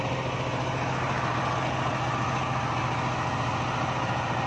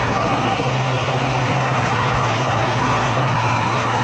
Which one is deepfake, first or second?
second